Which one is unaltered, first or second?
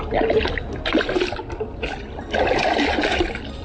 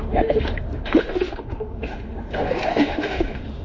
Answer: first